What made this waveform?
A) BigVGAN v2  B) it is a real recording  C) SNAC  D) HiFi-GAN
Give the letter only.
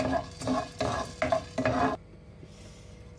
B